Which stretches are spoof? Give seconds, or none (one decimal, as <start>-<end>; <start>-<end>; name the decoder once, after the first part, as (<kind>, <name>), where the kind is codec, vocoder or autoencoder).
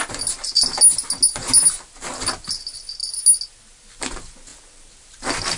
none